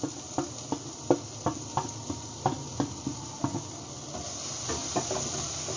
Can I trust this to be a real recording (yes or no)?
yes